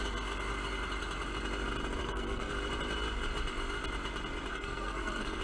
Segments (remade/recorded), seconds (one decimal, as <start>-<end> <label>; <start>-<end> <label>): 0.0-2.0 recorded; 2.0-2.5 remade; 2.5-4.5 recorded; 4.5-5.4 remade